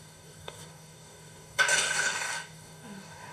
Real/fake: fake